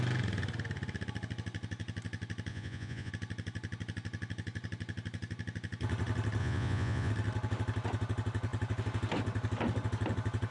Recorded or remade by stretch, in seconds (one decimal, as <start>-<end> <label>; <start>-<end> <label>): 0.0-2.5 recorded; 2.5-3.1 remade; 3.1-6.4 recorded; 6.4-7.1 remade; 7.1-10.5 recorded